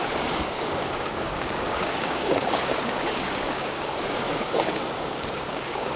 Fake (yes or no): yes